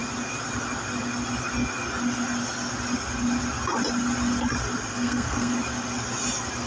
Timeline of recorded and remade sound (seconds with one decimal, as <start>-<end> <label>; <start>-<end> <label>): 0.0-4.9 recorded; 4.9-5.5 remade; 5.5-6.7 recorded